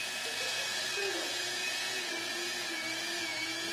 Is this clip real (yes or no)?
no